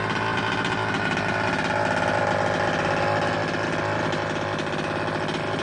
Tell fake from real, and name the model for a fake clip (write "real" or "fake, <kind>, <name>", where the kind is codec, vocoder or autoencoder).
real